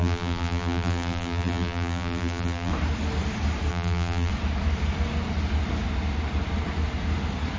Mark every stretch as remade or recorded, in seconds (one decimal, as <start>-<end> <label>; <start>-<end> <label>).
0.0-2.7 remade; 2.7-3.7 recorded; 3.7-4.3 remade; 4.3-7.6 recorded